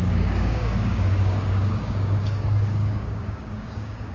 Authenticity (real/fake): fake